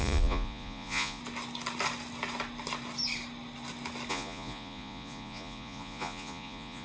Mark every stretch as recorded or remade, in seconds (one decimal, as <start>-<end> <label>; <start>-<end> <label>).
0.0-1.2 remade; 1.2-4.1 recorded; 4.1-6.8 remade